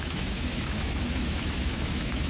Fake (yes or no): yes